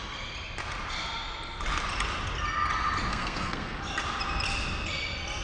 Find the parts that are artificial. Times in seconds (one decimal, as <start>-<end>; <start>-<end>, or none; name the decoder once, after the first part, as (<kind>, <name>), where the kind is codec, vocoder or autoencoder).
3.1-3.8 (codec, SNAC)